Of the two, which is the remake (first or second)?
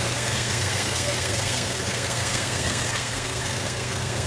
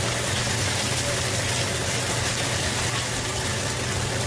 first